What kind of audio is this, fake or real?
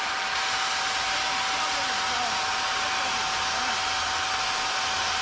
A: real